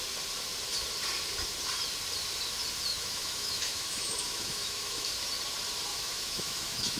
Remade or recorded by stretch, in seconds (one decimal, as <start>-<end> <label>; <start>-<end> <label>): 0.0-2.9 recorded; 2.9-5.1 remade; 5.1-5.9 recorded; 5.9-7.0 remade